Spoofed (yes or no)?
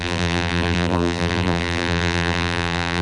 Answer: yes